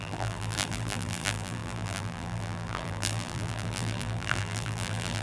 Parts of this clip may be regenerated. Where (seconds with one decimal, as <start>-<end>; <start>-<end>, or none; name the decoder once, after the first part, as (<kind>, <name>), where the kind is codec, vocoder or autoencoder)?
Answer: 0.0-5.2 (vocoder, BigVGAN v2)